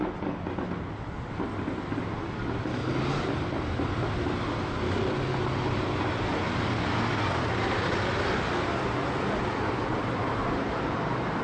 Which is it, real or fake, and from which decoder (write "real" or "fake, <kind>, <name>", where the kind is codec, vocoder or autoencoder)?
real